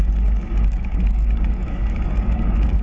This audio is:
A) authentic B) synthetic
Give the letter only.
B